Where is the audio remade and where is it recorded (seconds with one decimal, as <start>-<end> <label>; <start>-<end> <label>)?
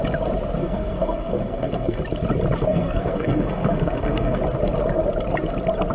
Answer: 0.0-0.6 recorded; 0.6-2.0 remade; 2.0-2.6 recorded; 2.6-4.4 remade; 4.4-5.9 recorded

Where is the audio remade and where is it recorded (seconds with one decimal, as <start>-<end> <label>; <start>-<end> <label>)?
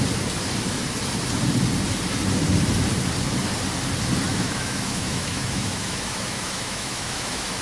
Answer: 0.0-4.3 recorded; 4.3-7.6 remade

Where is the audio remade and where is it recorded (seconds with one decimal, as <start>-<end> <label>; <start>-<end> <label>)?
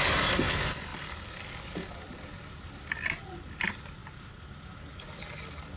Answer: 0.0-5.8 recorded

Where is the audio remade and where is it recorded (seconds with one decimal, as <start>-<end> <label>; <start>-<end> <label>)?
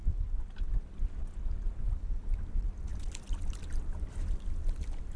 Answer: 0.0-5.2 recorded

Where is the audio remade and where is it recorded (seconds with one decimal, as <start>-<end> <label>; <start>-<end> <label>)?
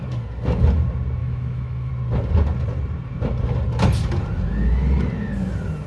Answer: 0.0-1.2 recorded; 1.2-1.9 remade; 1.9-5.9 recorded